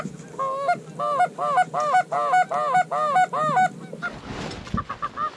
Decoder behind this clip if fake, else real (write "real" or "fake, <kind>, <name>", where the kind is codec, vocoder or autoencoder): real